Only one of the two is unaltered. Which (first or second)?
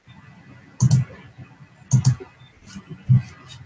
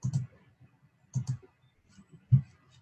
first